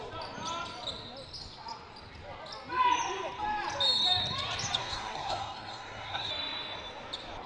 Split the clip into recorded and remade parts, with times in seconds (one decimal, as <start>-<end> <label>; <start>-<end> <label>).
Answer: 0.0-4.8 recorded; 4.8-6.3 remade; 6.3-7.5 recorded